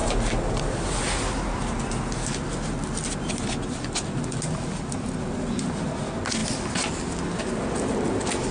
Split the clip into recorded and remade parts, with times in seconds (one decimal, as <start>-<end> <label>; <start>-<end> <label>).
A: 0.0-8.5 recorded